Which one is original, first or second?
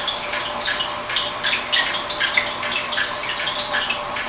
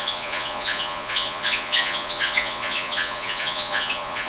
first